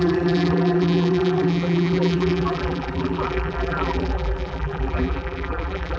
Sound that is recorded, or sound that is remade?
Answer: remade